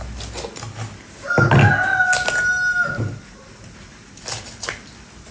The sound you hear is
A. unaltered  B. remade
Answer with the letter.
A